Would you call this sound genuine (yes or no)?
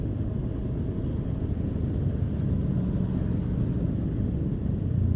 yes